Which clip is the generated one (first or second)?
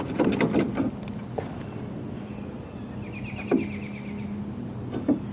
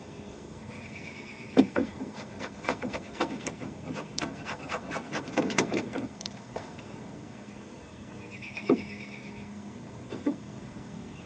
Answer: second